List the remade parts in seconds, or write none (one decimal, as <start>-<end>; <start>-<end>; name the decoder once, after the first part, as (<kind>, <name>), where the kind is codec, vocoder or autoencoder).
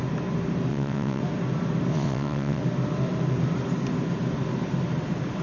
0.7-1.2 (vocoder, WaveNeXt); 1.9-2.6